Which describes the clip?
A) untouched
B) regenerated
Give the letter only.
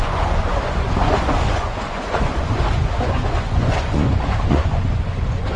B